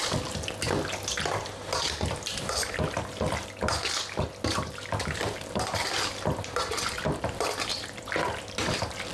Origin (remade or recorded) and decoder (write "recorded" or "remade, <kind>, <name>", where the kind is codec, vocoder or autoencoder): recorded